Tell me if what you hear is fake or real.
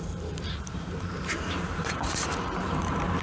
fake